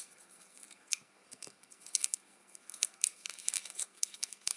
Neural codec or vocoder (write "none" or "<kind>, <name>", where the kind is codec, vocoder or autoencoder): codec, SNAC